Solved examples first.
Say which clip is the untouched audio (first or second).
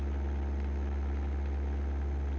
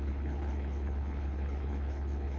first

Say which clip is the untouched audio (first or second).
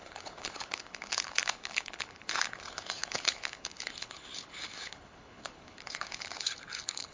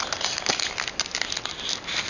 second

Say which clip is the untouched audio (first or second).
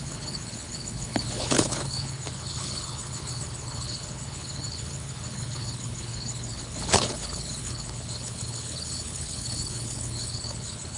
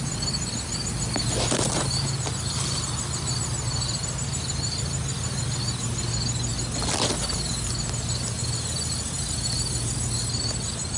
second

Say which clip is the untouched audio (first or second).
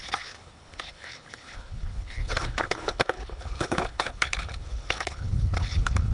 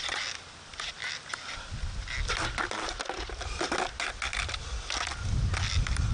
second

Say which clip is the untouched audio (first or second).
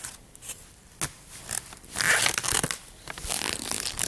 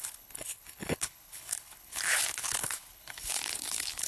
first